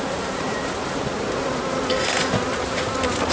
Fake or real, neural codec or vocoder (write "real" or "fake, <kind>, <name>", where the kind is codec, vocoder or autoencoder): real